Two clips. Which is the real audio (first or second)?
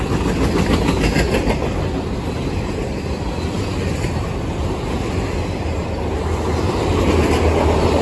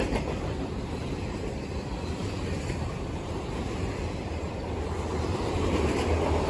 first